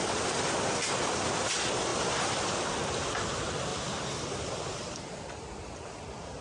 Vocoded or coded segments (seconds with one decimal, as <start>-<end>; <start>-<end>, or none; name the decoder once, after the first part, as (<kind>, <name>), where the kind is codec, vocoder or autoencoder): 1.9-2.5 (vocoder, BigVGAN v2); 3.7-5.2